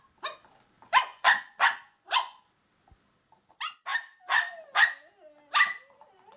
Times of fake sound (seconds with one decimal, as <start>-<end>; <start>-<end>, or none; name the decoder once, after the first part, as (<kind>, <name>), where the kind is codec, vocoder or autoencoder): 1.1-2.5 (vocoder, Vocos)